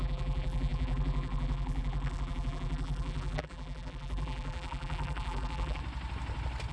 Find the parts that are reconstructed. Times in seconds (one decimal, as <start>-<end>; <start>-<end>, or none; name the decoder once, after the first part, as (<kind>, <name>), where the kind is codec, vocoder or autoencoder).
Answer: 0.0-5.8 (vocoder, BigVGAN v2)